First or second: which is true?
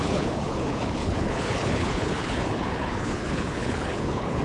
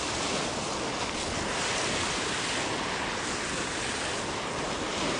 second